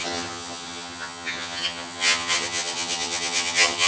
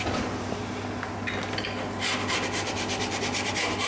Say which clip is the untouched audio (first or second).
second